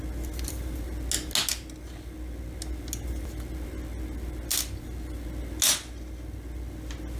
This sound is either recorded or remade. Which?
recorded